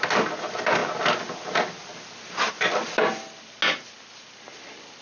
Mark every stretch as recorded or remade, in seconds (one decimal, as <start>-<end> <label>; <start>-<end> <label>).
0.0-5.0 recorded